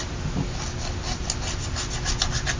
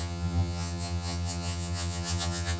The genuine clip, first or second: first